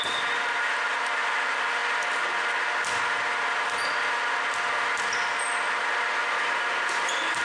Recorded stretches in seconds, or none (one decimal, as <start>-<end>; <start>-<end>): 0.0-7.4